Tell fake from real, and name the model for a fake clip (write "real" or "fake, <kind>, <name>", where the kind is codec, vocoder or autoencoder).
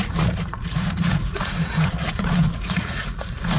fake, vocoder, Vocos